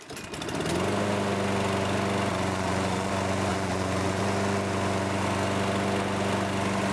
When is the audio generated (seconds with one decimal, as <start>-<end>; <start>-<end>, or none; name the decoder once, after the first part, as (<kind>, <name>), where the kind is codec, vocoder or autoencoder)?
2.3-3.1 (vocoder, Vocos); 3.5-4.2